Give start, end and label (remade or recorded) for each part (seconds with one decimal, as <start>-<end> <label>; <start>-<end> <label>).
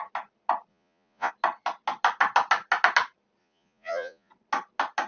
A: 0.0-0.7 recorded; 0.7-1.3 remade; 1.3-3.4 recorded; 3.4-4.3 remade; 4.3-5.1 recorded